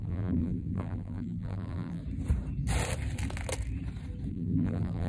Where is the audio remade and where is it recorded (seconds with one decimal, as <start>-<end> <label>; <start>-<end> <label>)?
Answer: 0.0-2.0 remade; 2.0-4.3 recorded; 4.3-5.1 remade